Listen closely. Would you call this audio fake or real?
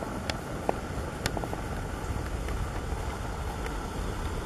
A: real